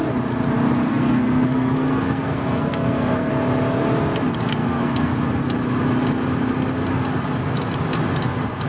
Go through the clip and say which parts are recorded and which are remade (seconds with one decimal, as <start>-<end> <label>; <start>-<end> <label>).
0.0-0.9 recorded; 0.9-3.3 remade; 3.3-4.6 recorded; 4.6-5.1 remade; 5.1-8.7 recorded